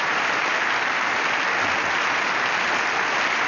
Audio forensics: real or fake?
real